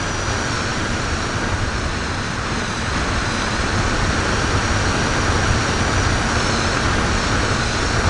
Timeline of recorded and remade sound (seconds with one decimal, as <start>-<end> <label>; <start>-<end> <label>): 0.0-0.7 recorded; 0.7-4.8 remade; 4.8-8.1 recorded